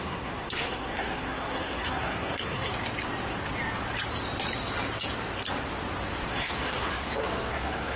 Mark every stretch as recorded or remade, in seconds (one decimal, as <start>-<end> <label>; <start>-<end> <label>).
0.0-2.7 remade; 2.7-6.3 recorded; 6.3-6.9 remade; 6.9-7.5 recorded; 7.5-8.0 remade